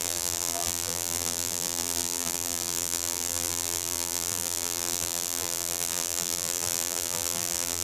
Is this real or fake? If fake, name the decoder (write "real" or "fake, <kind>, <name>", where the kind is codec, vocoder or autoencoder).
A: fake, vocoder, BigVGAN v2